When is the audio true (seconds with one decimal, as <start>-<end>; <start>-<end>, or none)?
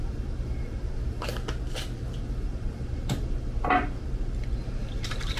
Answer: 1.3-2.2